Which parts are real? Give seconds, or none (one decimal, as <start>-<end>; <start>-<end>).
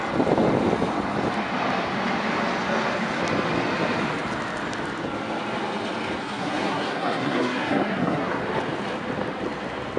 0.0-6.2; 8.4-10.0